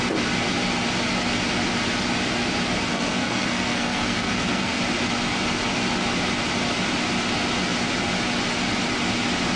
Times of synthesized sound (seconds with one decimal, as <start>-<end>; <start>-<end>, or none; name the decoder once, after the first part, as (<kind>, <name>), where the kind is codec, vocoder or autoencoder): 2.9-4.8 (codec, SNAC)